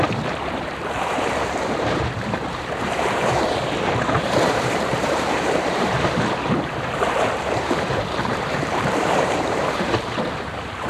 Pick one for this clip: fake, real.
fake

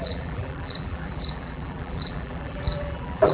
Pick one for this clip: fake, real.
fake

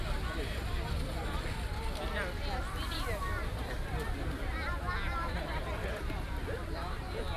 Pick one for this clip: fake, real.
fake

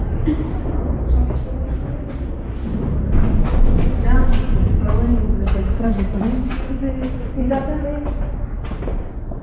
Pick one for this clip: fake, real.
fake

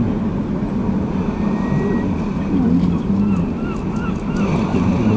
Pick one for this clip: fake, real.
real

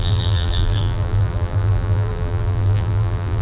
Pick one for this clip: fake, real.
fake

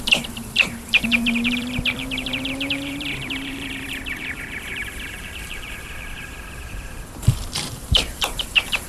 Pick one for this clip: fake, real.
fake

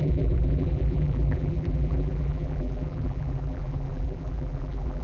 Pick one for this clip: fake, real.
fake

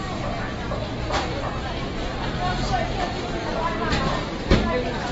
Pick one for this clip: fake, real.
fake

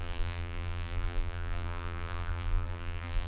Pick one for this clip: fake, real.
fake